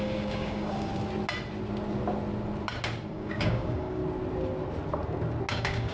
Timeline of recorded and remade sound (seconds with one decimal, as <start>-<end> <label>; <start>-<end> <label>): 0.0-0.9 remade; 0.9-3.1 recorded; 3.1-4.0 remade; 4.0-5.5 recorded; 5.5-5.9 remade